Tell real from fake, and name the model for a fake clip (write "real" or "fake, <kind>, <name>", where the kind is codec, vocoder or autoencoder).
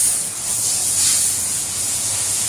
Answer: fake, vocoder, Vocos